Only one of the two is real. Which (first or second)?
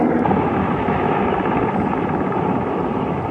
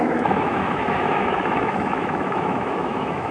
first